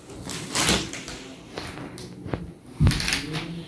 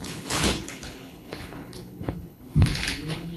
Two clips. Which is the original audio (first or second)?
first